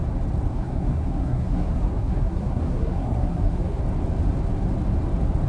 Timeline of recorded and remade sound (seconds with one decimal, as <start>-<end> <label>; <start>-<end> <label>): 0.0-0.5 recorded; 0.5-3.8 remade; 3.8-5.5 recorded